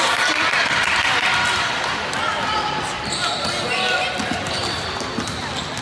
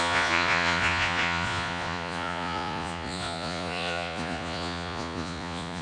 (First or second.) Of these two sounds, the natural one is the first